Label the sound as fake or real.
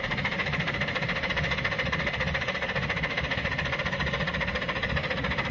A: real